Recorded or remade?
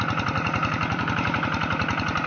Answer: remade